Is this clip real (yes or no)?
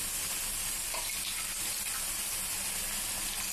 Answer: yes